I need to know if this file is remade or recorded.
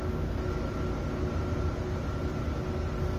recorded